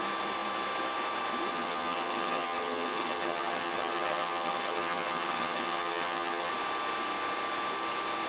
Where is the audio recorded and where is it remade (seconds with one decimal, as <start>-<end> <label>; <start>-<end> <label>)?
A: 0.0-1.5 recorded; 1.5-6.5 remade; 6.5-8.3 recorded